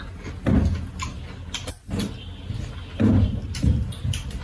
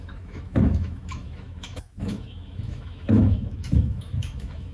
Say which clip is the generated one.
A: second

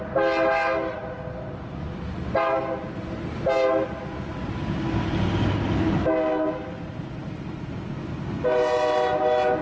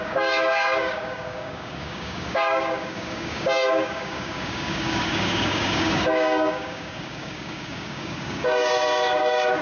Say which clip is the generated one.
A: second